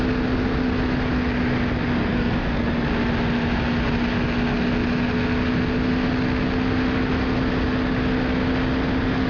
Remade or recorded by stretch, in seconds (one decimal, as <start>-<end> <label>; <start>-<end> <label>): 0.0-2.0 recorded; 2.0-2.7 remade; 2.7-9.3 recorded